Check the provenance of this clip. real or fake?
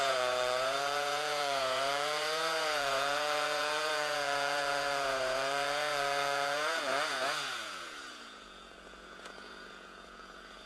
fake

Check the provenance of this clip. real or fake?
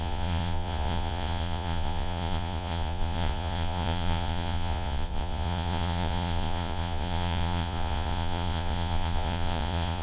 fake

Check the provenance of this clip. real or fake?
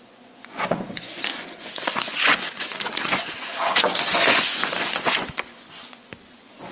fake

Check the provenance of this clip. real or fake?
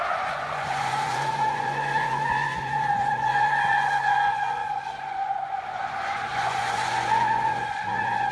fake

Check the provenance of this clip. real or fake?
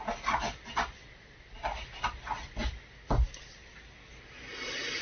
real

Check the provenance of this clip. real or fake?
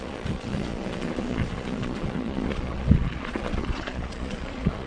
fake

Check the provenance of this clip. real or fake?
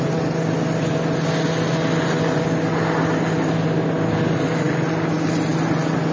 real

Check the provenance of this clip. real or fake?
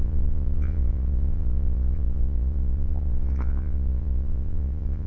fake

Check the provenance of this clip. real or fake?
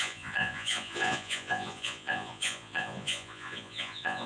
fake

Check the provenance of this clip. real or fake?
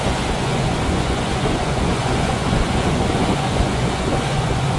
fake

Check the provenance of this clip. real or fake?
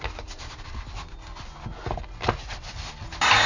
real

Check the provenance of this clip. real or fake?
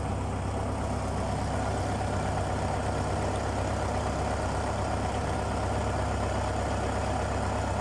real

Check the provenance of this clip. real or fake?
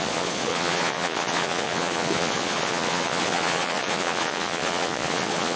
fake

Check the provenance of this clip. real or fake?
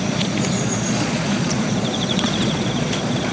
fake